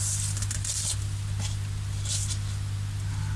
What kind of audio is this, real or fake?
real